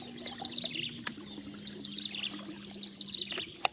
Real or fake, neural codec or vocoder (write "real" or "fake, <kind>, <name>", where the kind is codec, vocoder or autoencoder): real